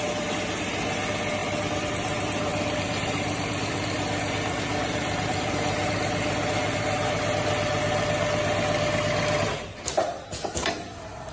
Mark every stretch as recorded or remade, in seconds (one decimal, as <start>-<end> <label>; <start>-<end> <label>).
0.0-1.4 recorded; 1.4-1.9 remade; 1.9-2.5 recorded; 2.5-5.5 remade; 5.5-11.3 recorded